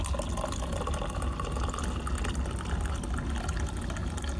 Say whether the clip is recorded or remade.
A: recorded